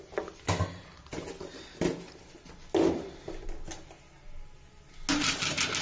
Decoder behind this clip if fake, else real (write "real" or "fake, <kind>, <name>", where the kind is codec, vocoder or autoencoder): real